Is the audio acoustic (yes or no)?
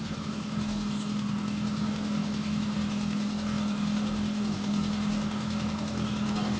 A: no